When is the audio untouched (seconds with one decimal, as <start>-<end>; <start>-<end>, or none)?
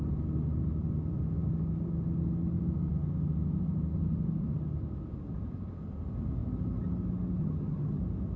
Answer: 0.0-7.4; 8.0-8.4